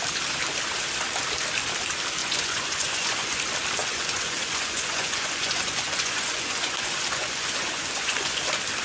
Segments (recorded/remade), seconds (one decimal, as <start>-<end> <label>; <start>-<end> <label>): 0.0-2.2 recorded; 2.2-3.4 remade; 3.4-3.8 recorded; 3.8-8.4 remade; 8.4-8.8 recorded